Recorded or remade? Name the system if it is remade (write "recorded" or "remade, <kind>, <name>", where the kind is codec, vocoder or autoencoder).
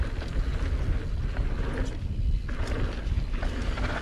recorded